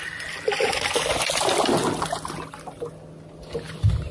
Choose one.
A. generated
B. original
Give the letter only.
B